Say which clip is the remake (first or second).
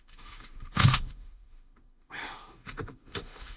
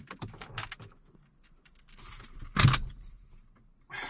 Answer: first